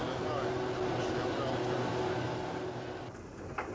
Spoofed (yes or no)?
no